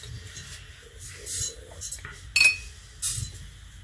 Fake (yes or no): no